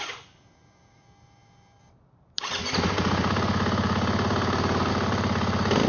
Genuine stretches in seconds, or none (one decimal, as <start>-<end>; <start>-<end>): 0.0-5.9